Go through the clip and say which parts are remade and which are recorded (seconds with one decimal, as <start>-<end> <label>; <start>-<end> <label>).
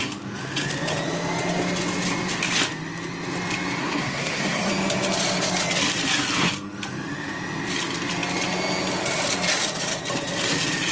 0.0-3.8 recorded; 3.8-4.7 remade; 4.7-10.9 recorded